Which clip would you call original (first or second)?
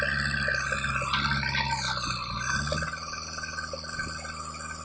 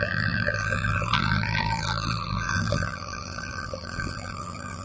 first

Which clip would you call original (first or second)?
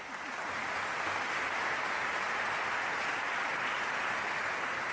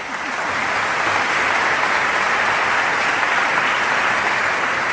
first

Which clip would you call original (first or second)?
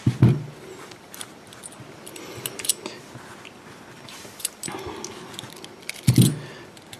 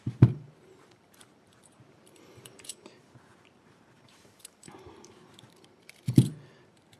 first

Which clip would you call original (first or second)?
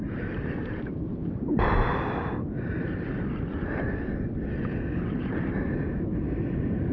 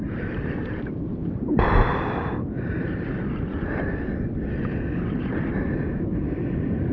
first